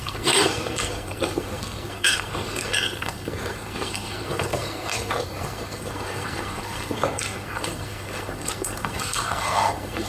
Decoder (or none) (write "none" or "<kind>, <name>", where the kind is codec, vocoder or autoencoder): codec, SNAC